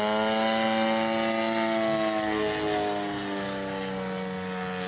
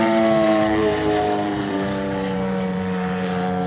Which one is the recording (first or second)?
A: first